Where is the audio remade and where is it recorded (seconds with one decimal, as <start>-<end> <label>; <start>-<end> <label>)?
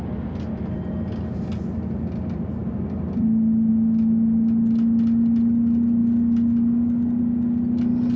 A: 0.0-8.2 recorded